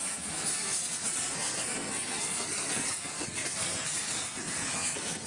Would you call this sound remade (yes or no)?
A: yes